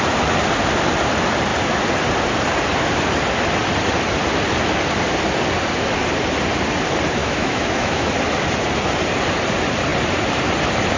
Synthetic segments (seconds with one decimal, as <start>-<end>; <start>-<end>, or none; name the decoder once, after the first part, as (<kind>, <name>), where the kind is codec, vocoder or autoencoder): 7.2-8.1 (autoencoder, DAC-VAE)